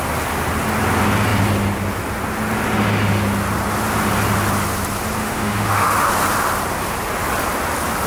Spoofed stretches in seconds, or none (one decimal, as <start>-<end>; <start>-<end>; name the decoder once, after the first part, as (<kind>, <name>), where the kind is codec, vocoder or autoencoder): 5.2-6.1 (autoencoder, DAC-VAE)